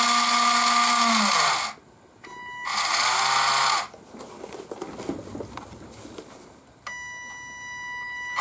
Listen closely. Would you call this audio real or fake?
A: real